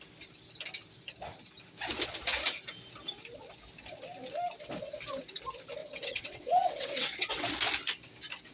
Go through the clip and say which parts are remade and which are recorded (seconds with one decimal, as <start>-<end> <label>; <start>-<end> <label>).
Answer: 0.0-5.8 recorded; 5.8-7.5 remade; 7.5-8.5 recorded